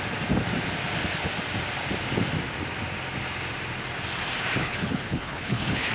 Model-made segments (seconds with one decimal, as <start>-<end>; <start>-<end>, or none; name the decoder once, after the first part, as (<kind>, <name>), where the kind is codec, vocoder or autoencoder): 4.6-5.9 (codec, HILCodec)